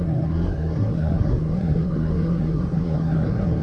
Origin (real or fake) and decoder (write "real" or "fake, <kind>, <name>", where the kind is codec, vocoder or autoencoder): fake, codec, SNAC